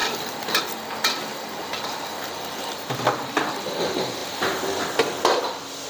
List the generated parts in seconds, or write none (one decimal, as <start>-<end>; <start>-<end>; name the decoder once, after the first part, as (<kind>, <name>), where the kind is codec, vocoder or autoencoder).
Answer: 0.0-0.6 (vocoder, BigVGAN v2); 1.3-3.3; 4.2-4.8